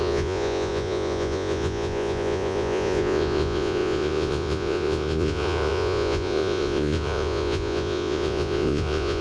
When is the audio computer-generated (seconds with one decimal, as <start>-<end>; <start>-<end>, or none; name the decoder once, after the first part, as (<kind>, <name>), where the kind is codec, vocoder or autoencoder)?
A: 0.0-9.2 (vocoder, Vocos)